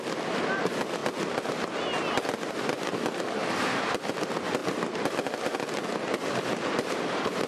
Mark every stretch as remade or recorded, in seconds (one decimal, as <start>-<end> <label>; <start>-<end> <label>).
0.0-1.0 remade; 1.0-2.5 recorded; 2.5-7.5 remade